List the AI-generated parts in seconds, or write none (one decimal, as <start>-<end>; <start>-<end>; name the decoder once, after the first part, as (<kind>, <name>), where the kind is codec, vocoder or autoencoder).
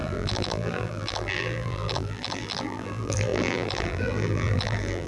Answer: 0.0-5.1 (vocoder, BigVGAN v2)